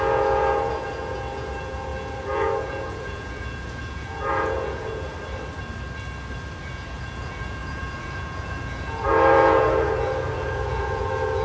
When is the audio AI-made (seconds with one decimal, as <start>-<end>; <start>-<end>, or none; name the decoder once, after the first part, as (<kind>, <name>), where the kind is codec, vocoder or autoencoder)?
0.0-5.1 (vocoder, Vocos); 6.6-11.4

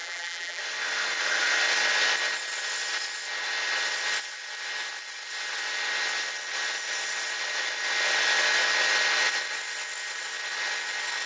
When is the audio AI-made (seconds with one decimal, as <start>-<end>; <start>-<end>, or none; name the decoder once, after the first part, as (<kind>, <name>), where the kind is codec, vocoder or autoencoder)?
0.0-0.6 (vocoder, BigVGAN v2)